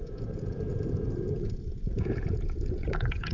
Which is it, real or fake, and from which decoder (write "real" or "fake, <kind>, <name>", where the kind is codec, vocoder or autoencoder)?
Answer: fake, vocoder, Vocos